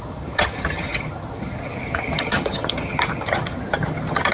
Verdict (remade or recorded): remade